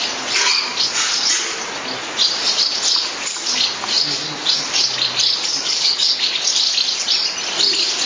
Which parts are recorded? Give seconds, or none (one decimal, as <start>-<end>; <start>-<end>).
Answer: 0.0-5.5; 6.1-8.1